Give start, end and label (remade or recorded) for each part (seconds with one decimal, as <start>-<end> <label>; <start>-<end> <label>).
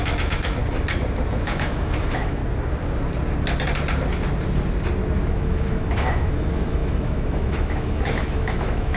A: 0.0-0.6 remade; 0.6-1.3 recorded; 1.3-2.4 remade; 2.4-5.2 recorded; 5.2-9.0 remade